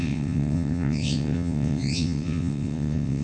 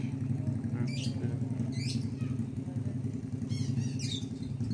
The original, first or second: second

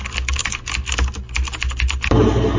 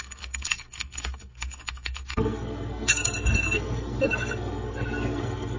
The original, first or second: first